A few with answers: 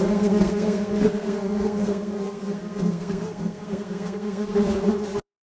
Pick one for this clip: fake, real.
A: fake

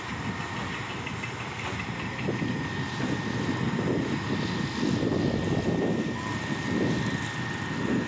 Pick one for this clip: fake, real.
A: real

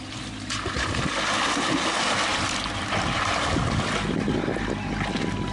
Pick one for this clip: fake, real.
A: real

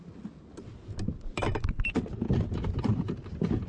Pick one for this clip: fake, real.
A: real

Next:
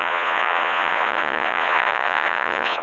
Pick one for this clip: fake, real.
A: fake